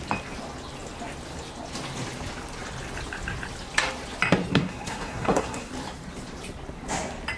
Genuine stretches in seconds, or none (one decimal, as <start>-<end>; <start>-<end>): 0.0-4.5; 5.7-7.4